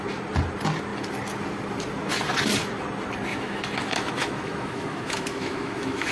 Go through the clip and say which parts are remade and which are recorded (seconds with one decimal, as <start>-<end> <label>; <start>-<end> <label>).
0.0-3.3 recorded; 3.3-6.1 remade